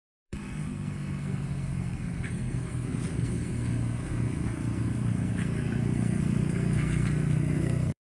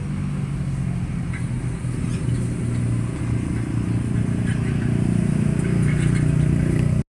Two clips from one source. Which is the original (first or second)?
second